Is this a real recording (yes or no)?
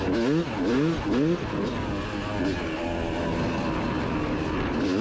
yes